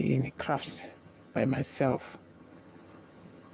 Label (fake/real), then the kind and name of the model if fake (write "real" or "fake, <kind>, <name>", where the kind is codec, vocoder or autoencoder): fake, vocoder, HiFi-GAN